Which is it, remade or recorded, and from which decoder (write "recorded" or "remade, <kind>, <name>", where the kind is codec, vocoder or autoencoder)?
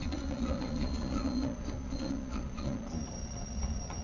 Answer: remade, vocoder, Vocos